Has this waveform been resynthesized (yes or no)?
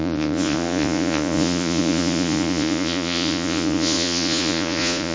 yes